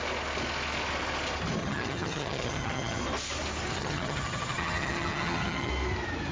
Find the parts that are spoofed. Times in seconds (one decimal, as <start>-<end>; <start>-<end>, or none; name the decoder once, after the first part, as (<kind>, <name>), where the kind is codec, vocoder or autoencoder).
1.6-3.0 (vocoder, HiFi-GAN); 3.7-5.7